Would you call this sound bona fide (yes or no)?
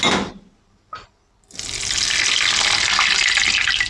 yes